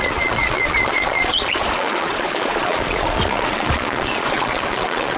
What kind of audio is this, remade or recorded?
remade